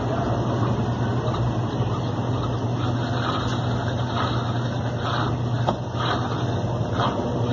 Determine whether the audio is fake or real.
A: real